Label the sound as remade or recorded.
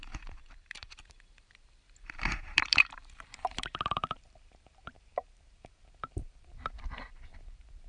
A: remade